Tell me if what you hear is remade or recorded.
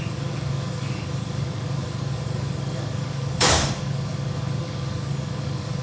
remade